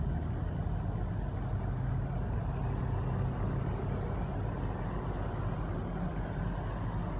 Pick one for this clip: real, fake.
real